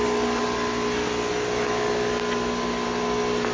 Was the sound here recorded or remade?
recorded